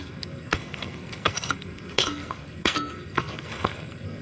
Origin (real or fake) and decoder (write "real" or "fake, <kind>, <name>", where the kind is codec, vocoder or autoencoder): fake, codec, SNAC